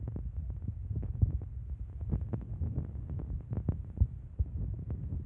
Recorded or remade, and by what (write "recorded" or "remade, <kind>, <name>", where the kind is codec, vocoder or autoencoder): recorded